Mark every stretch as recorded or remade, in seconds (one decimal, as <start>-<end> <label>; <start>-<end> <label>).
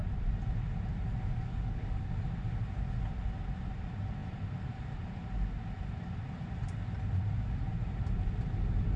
0.0-1.4 recorded; 1.4-2.1 remade; 2.1-9.0 recorded